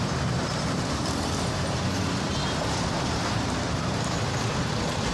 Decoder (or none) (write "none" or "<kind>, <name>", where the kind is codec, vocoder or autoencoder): vocoder, BigVGAN v2